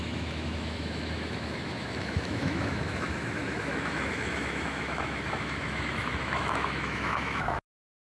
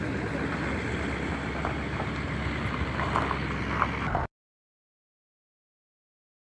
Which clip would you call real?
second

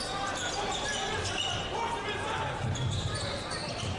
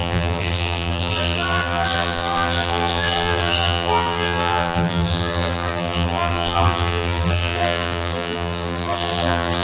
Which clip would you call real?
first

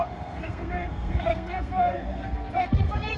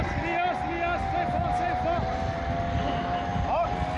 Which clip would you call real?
second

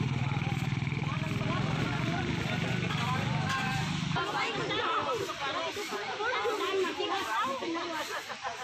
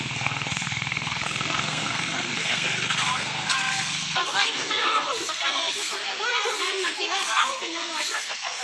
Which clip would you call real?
first